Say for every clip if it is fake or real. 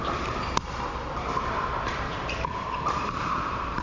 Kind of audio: fake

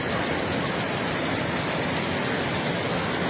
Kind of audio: real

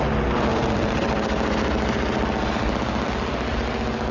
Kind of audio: real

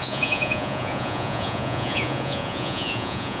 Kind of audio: fake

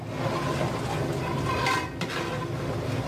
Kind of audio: real